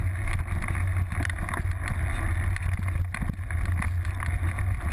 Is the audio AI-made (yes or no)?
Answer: no